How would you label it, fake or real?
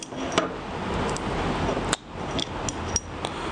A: real